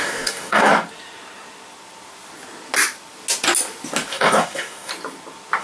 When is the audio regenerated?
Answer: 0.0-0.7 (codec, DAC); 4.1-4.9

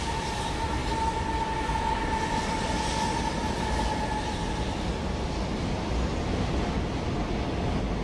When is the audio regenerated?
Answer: none

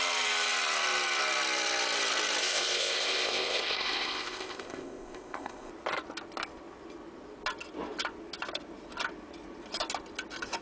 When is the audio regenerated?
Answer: 2.4-5.7 (codec, ZipCodec)

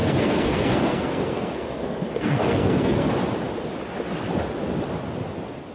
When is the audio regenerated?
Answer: 0.0-3.1 (codec, SNAC)

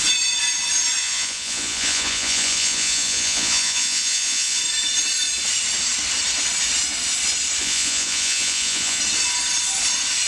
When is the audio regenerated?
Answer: 1.0-4.6 (vocoder, Vocos); 7.6-9.0

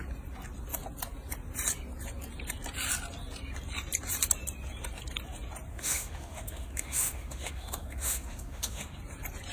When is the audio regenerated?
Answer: 5.7-9.0 (autoencoder, DAC-VAE)

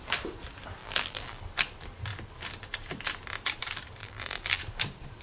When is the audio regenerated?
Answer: 0.8-1.4 (vocoder, BigVGAN v2); 4.0-4.6